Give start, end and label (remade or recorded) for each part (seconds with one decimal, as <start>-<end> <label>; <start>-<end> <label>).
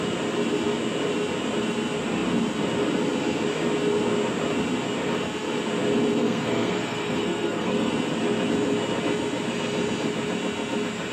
0.0-6.2 recorded; 6.2-7.9 remade; 7.9-11.1 recorded